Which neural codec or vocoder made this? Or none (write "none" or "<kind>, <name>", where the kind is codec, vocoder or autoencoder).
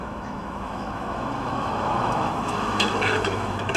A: autoencoder, DAC-VAE